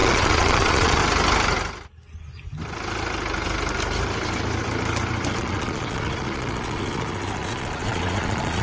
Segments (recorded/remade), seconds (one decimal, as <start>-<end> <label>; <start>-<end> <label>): 0.0-1.0 remade; 1.0-5.4 recorded; 5.4-8.6 remade